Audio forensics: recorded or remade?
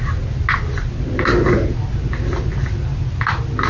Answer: recorded